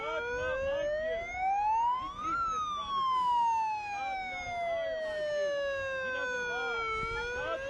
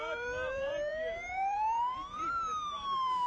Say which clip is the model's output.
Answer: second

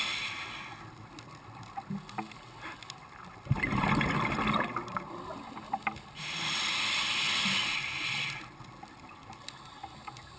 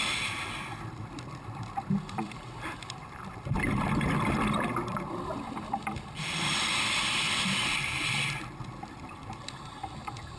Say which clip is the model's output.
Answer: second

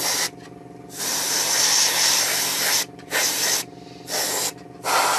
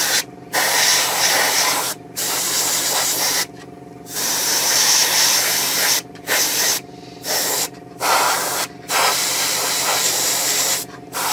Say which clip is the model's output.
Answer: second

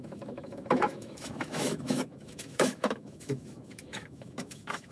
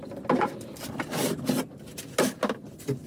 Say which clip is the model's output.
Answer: first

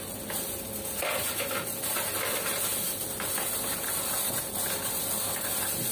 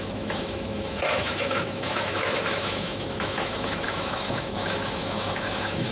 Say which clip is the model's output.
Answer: second